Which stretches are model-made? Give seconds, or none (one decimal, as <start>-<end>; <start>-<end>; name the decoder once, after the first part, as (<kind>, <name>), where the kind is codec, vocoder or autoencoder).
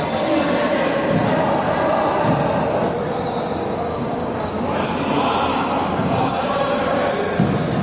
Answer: 3.6-4.5 (codec, DAC); 5.5-7.1